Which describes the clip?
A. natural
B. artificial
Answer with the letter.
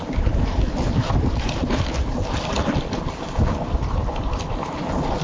A